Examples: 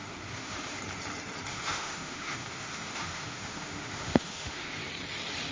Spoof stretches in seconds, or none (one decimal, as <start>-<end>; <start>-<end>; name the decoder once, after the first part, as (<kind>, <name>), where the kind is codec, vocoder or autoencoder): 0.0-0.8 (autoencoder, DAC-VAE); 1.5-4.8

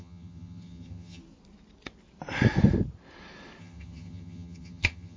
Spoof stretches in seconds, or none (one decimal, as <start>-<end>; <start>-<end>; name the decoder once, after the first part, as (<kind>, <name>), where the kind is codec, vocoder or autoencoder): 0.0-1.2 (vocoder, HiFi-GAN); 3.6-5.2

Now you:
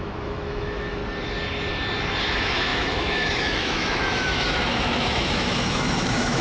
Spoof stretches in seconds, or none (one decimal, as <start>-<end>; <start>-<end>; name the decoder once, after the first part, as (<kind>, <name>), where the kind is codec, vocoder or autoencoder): 0.0-1.0 (autoencoder, DAC-VAE); 2.2-6.4

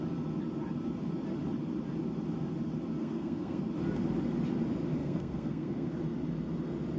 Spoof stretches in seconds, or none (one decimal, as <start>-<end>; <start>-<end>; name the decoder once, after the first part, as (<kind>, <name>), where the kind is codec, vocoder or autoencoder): 3.0-3.6 (codec, SNAC); 5.0-5.9

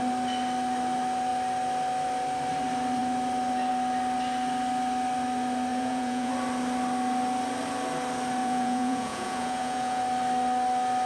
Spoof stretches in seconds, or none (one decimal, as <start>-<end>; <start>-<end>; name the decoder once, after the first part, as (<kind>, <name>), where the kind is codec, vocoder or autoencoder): 5.7-6.3 (vocoder, Vocos); 8.4-10.0